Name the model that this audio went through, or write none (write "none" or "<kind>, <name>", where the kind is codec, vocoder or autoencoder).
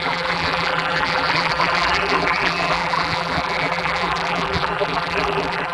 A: vocoder, BigVGAN v2